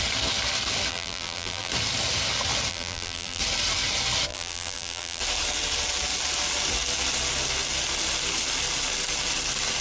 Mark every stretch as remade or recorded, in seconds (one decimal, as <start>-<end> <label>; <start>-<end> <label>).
0.0-0.9 recorded; 0.9-1.7 remade; 1.7-2.7 recorded; 2.7-3.4 remade; 3.4-4.3 recorded; 4.3-5.2 remade; 5.2-9.8 recorded